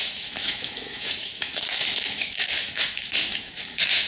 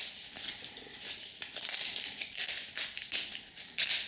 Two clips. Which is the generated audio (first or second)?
first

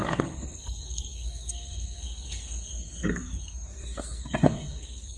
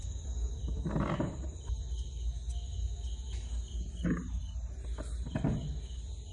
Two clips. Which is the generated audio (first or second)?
first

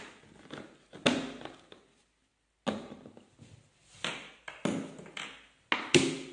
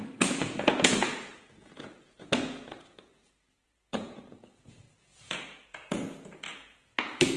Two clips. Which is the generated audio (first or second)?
second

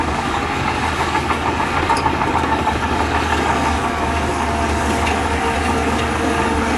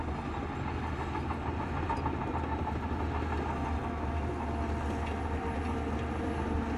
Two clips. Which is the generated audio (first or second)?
first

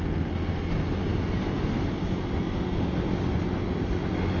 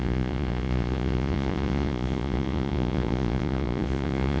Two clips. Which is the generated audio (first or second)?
second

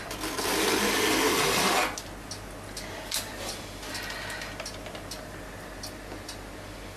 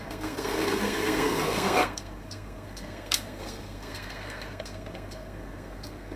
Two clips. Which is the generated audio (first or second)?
second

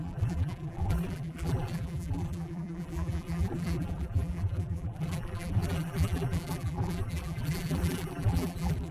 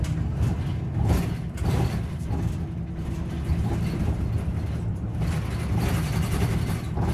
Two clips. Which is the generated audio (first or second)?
first